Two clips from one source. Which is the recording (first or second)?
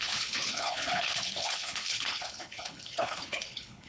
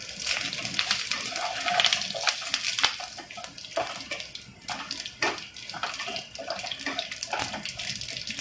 second